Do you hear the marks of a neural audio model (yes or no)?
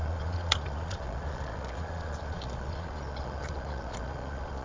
yes